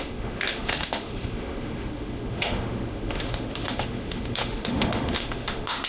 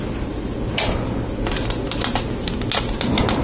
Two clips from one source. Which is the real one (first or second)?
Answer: second